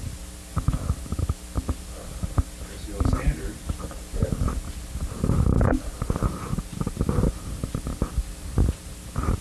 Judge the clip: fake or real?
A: real